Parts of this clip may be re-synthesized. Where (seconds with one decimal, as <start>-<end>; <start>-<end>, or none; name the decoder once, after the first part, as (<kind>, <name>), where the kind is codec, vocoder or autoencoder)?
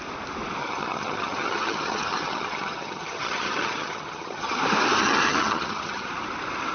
0.6-4.6 (vocoder, HiFi-GAN); 5.0-6.1